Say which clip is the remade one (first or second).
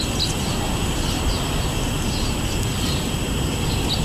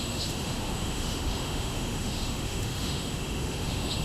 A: second